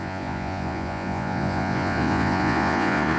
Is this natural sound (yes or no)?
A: no